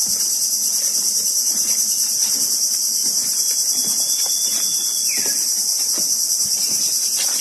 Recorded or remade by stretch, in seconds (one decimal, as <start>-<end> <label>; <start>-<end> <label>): 0.0-7.4 recorded

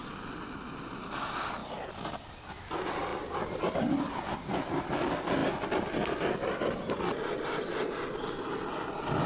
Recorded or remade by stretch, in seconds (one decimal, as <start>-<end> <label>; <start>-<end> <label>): 0.0-9.3 recorded

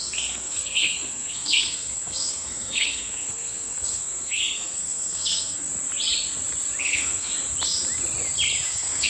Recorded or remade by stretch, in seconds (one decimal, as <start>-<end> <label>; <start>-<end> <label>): 0.0-5.7 remade; 5.7-6.8 recorded; 6.8-7.3 remade; 7.3-8.7 recorded; 8.7-9.1 remade

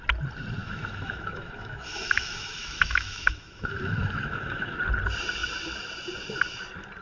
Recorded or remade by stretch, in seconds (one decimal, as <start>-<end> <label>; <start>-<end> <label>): 0.0-0.6 recorded; 0.6-4.8 remade; 4.8-7.0 recorded

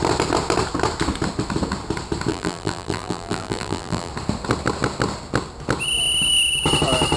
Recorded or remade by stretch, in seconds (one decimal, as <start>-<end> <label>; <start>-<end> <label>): 0.0-2.3 recorded; 2.3-4.1 remade; 4.1-7.2 recorded

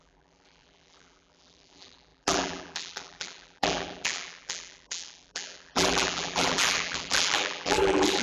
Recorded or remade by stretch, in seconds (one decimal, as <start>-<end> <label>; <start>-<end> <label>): 0.0-8.2 remade

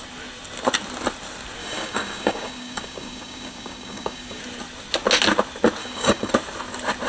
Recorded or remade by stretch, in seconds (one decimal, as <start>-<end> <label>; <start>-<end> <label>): 0.0-1.6 recorded; 1.6-4.4 remade; 4.4-5.8 recorded; 5.8-6.3 remade; 6.3-7.1 recorded

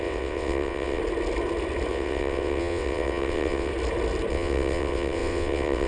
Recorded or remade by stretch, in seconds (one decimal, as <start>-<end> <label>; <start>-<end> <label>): 0.0-1.0 remade; 1.0-1.9 recorded; 1.9-3.7 remade; 3.7-4.3 recorded; 4.3-5.9 remade